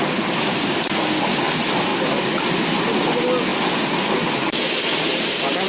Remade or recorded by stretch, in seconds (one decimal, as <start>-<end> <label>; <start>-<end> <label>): 0.0-4.9 recorded; 4.9-5.7 remade